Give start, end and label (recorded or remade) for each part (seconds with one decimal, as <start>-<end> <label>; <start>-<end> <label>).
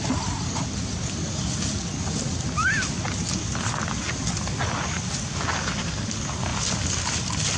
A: 0.0-7.6 recorded